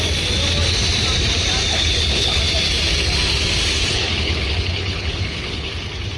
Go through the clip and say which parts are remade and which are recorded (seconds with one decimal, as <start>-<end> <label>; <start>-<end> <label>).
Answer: 0.0-1.7 recorded; 1.7-2.4 remade; 2.4-3.9 recorded; 3.9-5.7 remade; 5.7-6.2 recorded